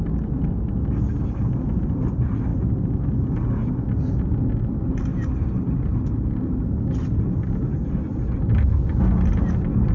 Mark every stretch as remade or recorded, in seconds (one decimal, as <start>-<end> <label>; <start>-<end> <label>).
0.0-9.9 recorded